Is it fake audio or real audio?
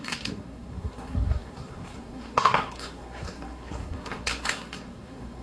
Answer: fake